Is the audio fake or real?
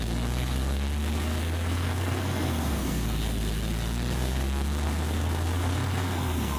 fake